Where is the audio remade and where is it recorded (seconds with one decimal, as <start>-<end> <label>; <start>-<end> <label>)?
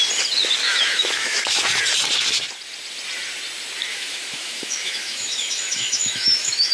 0.0-0.6 recorded; 0.6-1.5 remade; 1.5-3.9 recorded; 3.9-6.7 remade